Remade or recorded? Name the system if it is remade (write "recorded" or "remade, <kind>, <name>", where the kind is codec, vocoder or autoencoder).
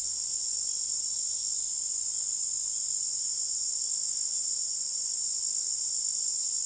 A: recorded